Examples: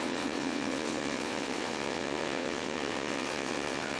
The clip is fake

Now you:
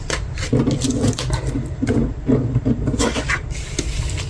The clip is real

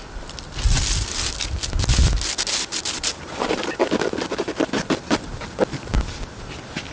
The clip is real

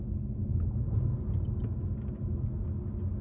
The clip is real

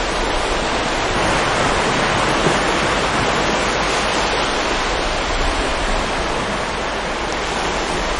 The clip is real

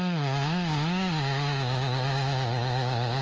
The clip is fake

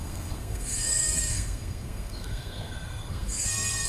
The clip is fake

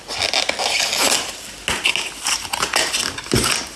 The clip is real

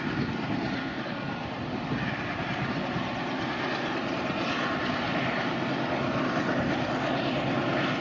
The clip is real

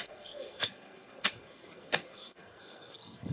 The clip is fake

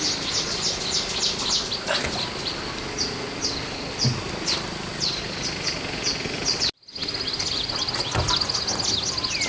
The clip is real